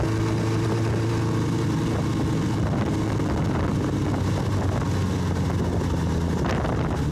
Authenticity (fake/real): real